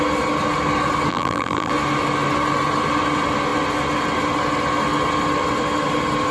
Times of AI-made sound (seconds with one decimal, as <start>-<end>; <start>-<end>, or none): 1.1-1.7